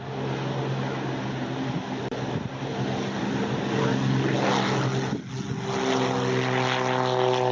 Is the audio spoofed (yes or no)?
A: no